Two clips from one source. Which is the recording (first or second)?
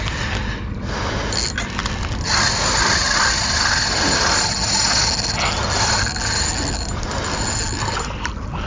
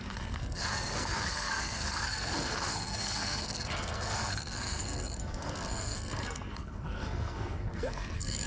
first